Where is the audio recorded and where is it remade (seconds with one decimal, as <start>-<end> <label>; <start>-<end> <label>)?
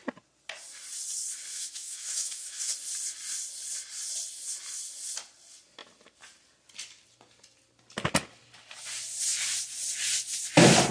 0.0-1.5 recorded; 1.5-2.6 remade; 2.6-10.9 recorded